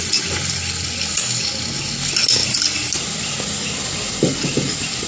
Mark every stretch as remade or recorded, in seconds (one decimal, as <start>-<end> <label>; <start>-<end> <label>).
0.0-5.1 recorded